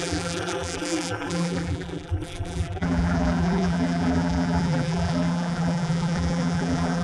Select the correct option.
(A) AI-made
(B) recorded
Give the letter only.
A